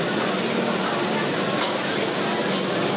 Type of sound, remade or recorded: recorded